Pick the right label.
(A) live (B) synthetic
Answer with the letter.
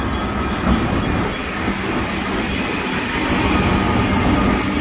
A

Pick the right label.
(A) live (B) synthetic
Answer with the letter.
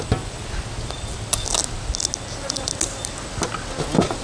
A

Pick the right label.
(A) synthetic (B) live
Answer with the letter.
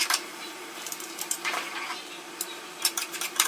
A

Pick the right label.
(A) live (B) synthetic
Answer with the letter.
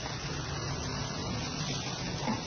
A